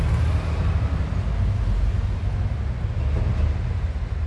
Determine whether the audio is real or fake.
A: real